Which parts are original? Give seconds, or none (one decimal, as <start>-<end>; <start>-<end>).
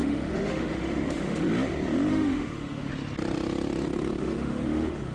1.5-2.1; 2.9-4.2